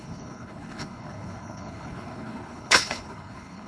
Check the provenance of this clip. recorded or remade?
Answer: remade